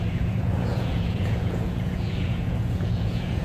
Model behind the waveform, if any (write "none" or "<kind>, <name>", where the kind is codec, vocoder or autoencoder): vocoder, Vocos